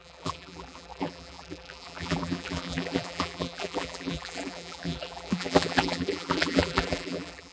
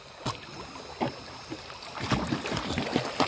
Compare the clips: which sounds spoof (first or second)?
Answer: first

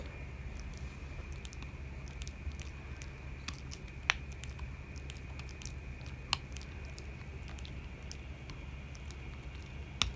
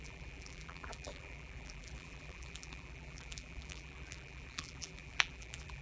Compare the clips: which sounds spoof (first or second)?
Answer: second